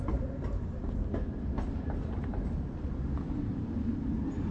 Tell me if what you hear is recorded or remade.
recorded